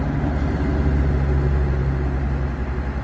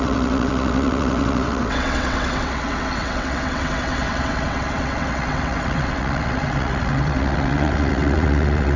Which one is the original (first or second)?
first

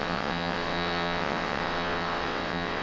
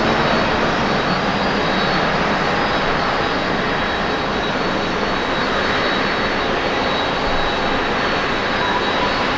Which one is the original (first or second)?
second